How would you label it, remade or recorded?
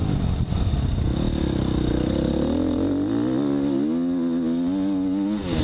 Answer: recorded